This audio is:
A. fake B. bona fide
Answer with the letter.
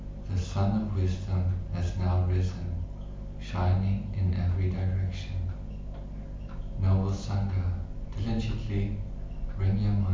B